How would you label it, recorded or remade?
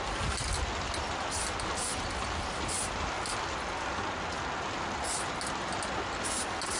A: recorded